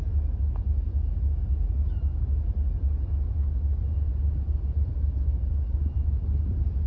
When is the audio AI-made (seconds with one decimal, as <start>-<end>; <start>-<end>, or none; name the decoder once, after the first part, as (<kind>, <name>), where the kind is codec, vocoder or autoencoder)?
none